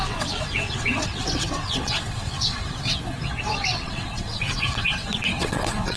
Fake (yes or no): yes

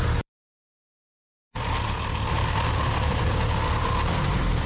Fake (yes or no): yes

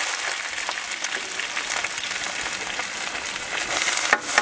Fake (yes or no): no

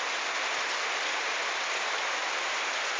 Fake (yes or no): no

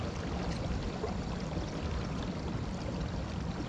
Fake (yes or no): no